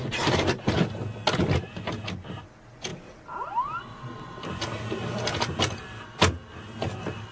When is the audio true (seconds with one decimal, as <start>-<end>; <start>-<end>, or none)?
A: 0.0-7.3